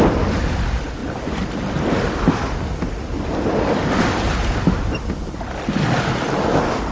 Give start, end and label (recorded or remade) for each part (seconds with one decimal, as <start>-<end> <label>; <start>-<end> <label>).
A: 0.0-6.9 recorded